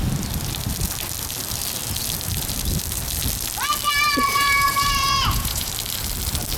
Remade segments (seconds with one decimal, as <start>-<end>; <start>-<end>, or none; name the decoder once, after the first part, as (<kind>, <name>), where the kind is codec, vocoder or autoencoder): 4.3-5.7 (vocoder, Vocos)